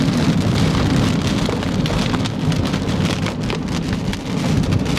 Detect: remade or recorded recorded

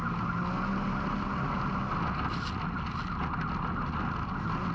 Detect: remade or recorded recorded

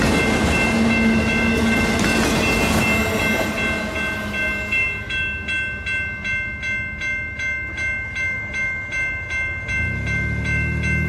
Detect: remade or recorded recorded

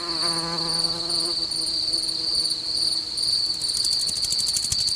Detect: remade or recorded recorded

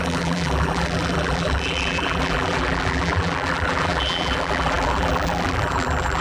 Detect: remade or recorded remade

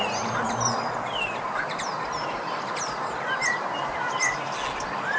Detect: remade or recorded recorded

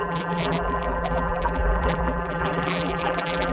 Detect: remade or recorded remade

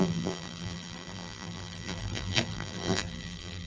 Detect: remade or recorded remade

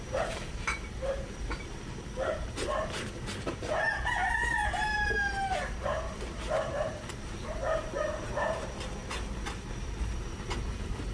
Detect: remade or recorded remade